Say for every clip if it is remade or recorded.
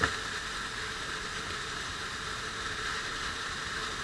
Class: recorded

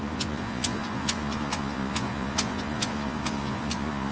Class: remade